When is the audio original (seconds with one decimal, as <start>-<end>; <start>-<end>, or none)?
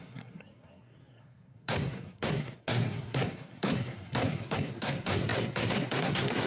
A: none